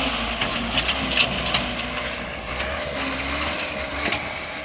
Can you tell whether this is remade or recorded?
recorded